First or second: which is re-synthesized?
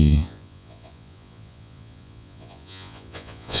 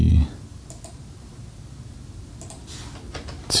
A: first